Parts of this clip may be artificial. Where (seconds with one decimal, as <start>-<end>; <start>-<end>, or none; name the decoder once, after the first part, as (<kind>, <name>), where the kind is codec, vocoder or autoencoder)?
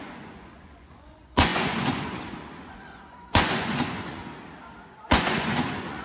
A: 0.0-4.2 (vocoder, Vocos); 4.8-6.0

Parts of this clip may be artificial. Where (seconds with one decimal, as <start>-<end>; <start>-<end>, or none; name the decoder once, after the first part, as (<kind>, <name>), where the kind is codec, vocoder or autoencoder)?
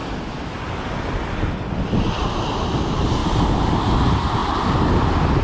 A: 2.8-3.2 (vocoder, BigVGAN v2); 3.7-4.4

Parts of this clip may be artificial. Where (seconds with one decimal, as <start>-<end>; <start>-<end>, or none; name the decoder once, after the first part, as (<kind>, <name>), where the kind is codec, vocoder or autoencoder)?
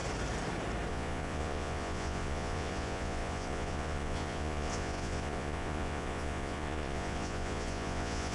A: 0.9-8.3 (vocoder, Vocos)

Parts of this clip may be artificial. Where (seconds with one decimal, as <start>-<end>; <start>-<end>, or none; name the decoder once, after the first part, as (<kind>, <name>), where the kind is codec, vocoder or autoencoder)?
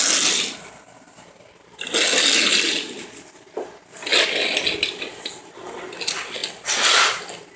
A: none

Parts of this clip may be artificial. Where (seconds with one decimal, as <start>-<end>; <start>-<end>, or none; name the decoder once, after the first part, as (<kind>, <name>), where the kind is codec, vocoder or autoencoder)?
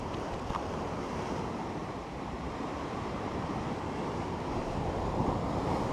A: 1.8-5.2 (vocoder, BigVGAN v2)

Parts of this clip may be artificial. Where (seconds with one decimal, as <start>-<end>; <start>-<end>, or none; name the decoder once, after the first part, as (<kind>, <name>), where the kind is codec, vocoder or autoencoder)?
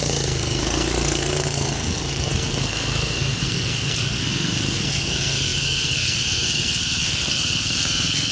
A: 0.0-8.3 (codec, SNAC)